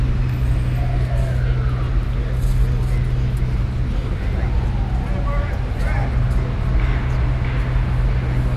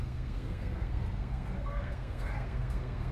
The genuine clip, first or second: first